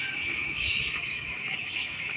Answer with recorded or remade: remade